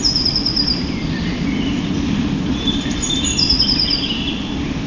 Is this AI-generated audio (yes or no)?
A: yes